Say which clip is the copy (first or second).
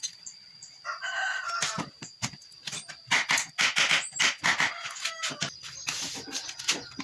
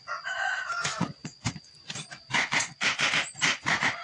second